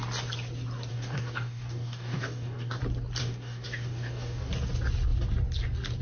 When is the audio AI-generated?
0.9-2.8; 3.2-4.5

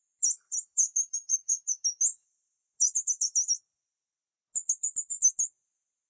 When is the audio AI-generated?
none

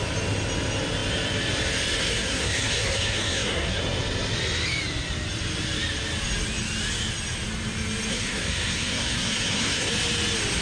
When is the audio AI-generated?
2.0-3.8; 8.1-9.9

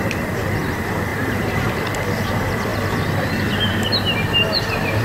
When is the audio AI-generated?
1.1-1.7

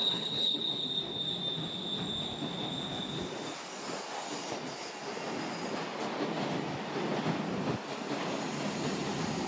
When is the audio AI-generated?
0.0-0.6

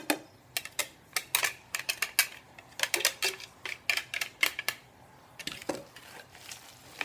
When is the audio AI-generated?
none